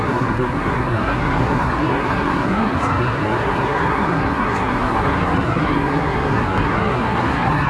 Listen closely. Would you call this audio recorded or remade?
remade